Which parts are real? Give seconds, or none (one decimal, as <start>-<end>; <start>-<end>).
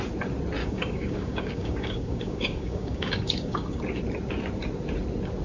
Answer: 0.0-0.6; 3.8-5.4